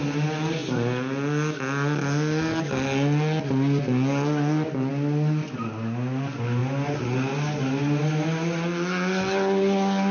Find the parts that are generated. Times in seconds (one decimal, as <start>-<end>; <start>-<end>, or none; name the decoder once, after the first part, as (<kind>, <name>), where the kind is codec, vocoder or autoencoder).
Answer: none